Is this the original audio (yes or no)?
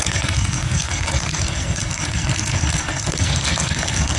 no